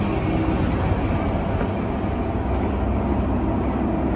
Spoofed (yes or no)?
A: no